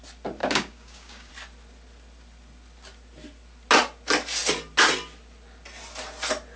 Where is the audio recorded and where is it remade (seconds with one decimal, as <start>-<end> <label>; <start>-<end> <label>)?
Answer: 0.0-0.4 recorded; 0.4-1.3 remade; 1.3-6.6 recorded